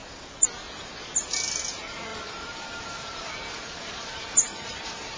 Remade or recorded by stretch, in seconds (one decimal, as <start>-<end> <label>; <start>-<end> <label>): 0.0-2.1 recorded; 2.1-5.2 remade